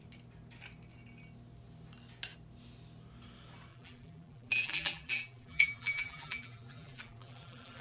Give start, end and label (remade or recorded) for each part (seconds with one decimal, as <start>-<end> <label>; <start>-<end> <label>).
0.0-3.7 recorded; 3.7-7.8 remade